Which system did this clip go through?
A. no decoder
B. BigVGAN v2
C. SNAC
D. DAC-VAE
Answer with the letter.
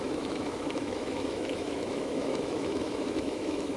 D